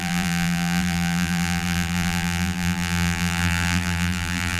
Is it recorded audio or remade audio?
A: remade